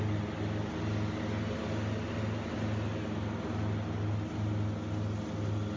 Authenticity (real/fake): real